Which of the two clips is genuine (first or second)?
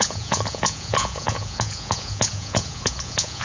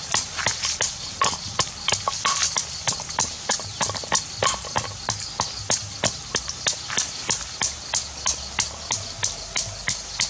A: second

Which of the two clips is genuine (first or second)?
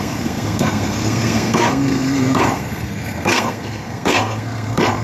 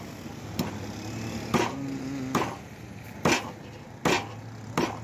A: second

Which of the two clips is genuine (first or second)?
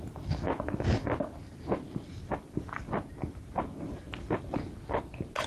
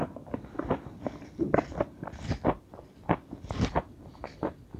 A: first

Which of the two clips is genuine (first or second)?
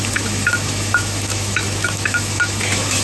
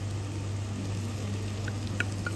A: second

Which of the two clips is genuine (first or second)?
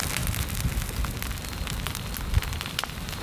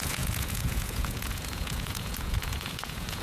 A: first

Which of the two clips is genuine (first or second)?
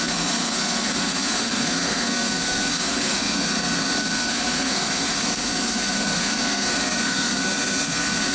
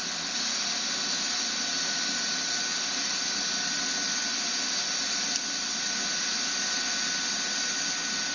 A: second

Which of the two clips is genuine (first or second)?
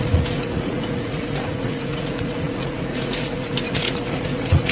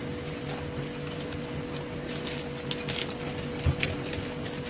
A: second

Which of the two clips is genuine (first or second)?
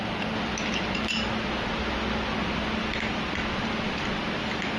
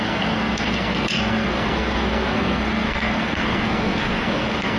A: first